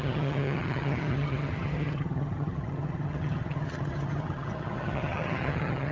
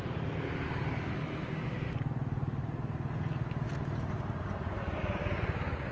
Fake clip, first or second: first